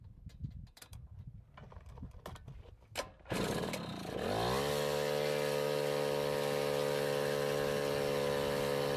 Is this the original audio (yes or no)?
yes